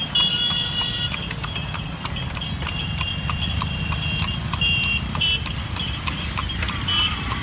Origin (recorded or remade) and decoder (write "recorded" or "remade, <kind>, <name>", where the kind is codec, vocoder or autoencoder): recorded